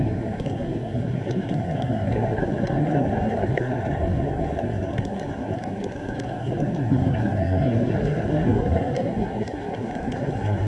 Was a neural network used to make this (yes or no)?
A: yes